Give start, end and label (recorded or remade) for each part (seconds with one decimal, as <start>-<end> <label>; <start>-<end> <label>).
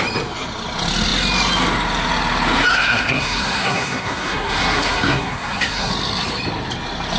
0.0-2.7 recorded; 2.7-5.9 remade; 5.9-7.2 recorded